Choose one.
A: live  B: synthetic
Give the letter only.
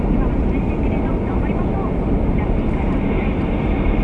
A